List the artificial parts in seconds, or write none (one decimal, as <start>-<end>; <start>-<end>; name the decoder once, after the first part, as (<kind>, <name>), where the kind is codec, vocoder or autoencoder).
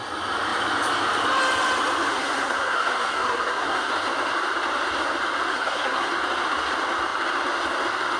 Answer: 2.1-3.9 (codec, SNAC); 5.5-6.1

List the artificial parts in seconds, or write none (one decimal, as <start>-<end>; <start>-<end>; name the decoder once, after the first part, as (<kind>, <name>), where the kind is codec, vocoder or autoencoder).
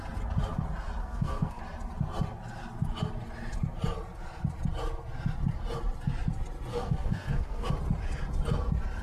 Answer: 1.0-1.6 (codec, SNAC); 6.7-7.7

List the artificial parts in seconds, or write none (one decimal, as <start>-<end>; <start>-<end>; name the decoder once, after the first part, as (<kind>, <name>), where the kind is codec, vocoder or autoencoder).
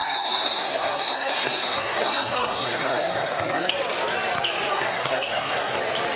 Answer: 0.0-3.7 (codec, SNAC); 4.7-5.8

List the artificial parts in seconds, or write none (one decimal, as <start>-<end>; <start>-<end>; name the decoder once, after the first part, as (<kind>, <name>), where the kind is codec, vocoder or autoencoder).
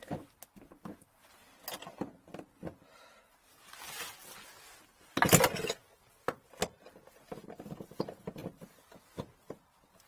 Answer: none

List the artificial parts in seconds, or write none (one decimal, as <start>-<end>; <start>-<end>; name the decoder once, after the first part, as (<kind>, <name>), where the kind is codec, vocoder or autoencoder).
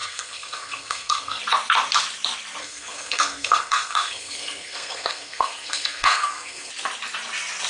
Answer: 0.0-1.4 (codec, SNAC); 2.6-6.7